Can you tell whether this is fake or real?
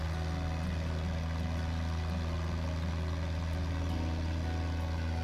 real